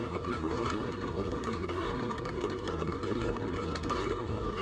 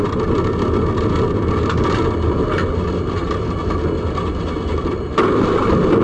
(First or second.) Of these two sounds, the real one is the second